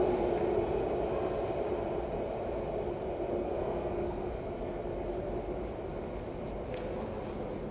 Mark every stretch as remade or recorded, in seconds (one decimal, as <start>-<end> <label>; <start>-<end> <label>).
0.0-3.4 recorded; 3.4-4.4 remade; 4.4-7.7 recorded